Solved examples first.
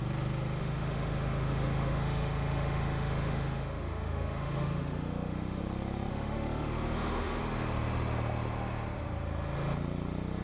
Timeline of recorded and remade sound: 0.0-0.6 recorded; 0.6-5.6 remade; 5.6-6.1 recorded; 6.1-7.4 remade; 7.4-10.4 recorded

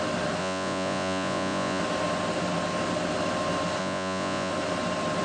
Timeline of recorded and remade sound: 0.0-0.4 recorded; 0.4-1.8 remade; 1.8-3.8 recorded; 3.8-4.5 remade; 4.5-5.2 recorded

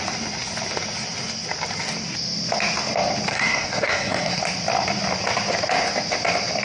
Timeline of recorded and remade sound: 0.0-3.3 recorded; 3.3-4.4 remade; 4.4-6.6 recorded

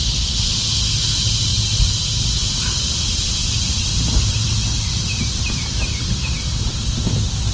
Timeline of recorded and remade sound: 0.0-1.5 remade; 1.5-2.2 recorded; 2.2-7.5 remade

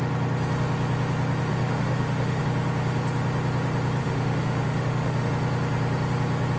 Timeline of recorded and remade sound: 0.0-1.5 recorded; 1.5-2.4 remade; 2.4-4.0 recorded; 4.0-5.3 remade; 5.3-6.6 recorded